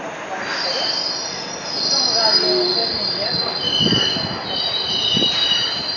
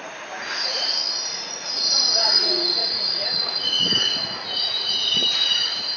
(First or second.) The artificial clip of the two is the second